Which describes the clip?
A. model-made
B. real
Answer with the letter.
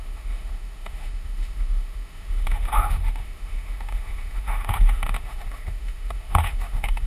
A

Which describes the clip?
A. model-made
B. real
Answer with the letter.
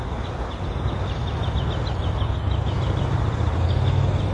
B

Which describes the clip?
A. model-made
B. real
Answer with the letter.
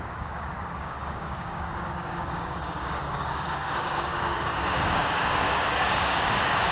A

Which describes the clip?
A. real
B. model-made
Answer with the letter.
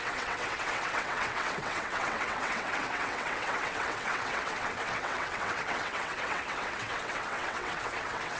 B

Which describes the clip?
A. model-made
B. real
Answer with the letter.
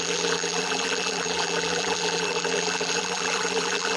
A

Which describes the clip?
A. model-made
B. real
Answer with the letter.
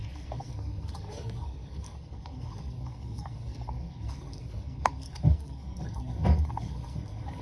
A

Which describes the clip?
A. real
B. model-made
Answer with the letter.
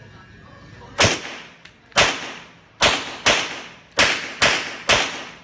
A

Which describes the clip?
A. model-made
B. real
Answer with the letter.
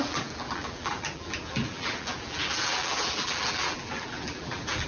A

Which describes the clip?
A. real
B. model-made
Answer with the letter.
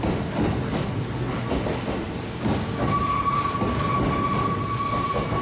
A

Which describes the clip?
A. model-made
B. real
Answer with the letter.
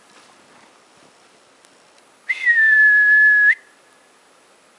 B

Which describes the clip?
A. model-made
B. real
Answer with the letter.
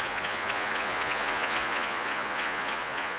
A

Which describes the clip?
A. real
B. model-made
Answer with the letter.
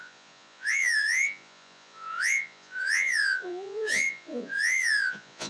B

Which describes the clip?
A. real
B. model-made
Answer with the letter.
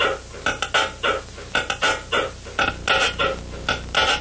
A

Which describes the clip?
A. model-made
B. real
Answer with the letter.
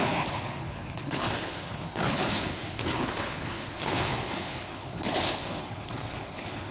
A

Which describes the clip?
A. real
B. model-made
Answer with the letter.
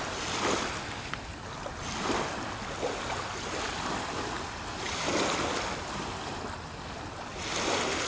A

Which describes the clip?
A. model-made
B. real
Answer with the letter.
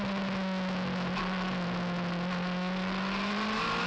B